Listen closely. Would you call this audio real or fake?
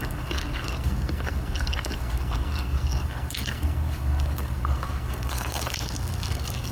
fake